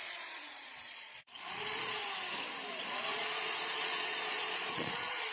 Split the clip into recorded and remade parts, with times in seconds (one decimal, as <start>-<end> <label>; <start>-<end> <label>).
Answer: 0.0-2.0 remade; 2.0-2.8 recorded; 2.8-5.3 remade